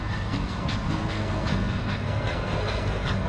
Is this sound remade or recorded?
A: remade